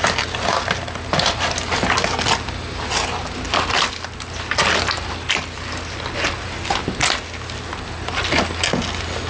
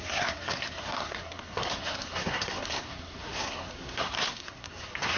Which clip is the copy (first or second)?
second